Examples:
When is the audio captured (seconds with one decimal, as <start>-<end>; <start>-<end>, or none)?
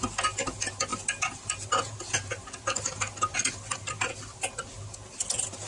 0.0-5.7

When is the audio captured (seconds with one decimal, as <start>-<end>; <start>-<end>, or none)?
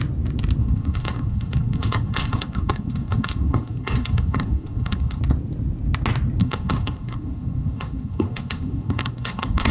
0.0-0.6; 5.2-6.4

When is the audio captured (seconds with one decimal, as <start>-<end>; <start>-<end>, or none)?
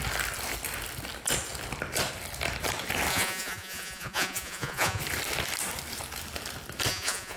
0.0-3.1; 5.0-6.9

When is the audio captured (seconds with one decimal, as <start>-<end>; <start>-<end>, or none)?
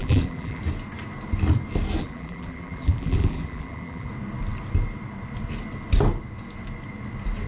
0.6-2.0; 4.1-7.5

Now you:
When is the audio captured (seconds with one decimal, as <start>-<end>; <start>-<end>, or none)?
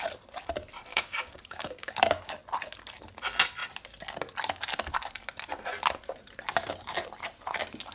0.0-0.9; 2.3-7.9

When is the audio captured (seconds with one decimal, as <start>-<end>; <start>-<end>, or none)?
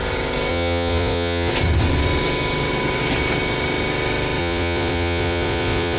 0.0-0.5; 1.5-4.4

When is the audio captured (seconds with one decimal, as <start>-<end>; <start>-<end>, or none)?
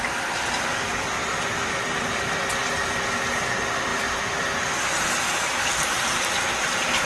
0.0-7.1